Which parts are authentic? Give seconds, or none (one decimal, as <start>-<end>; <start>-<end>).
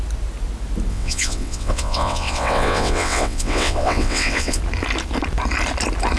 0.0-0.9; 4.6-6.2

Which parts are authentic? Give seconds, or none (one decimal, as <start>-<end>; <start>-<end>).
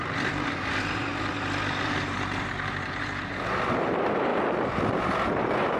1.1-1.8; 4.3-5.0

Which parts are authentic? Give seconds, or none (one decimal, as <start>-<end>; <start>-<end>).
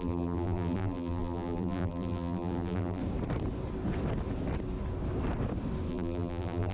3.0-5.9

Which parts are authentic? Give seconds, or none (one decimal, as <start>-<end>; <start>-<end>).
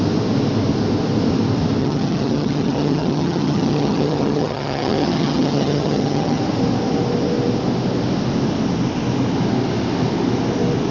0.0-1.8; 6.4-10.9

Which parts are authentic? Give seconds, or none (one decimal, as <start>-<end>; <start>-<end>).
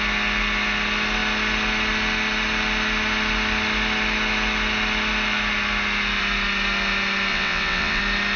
0.0-7.3; 8.0-8.4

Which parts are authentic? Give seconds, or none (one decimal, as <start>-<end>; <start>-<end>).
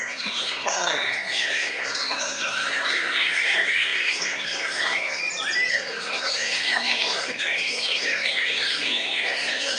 5.2-5.7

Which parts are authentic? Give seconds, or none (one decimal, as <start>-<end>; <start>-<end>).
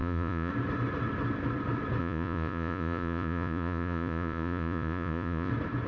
0.5-2.0; 5.5-5.9